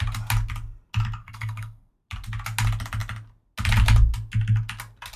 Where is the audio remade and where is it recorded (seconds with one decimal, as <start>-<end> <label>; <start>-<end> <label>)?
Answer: 0.0-1.2 recorded; 1.2-1.9 remade; 1.9-5.2 recorded